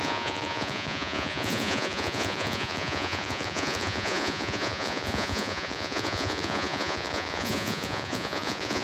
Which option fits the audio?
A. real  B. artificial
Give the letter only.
B